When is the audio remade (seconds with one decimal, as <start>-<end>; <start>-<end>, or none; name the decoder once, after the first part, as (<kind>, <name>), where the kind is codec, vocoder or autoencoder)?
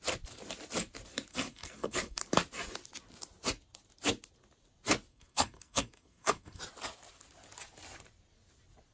1.3-2.2 (codec, SNAC); 5.1-6.6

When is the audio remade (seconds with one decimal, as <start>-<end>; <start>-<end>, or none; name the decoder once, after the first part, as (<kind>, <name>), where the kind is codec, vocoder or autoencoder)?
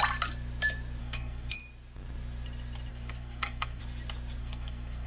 1.0-1.6 (codec, SNAC); 2.9-3.8; 4.4-5.1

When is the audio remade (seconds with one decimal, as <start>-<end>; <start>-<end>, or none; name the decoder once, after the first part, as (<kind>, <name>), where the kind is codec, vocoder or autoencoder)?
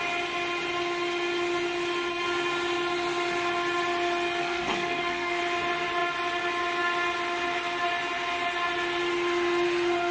4.4-5.4 (codec, SNAC)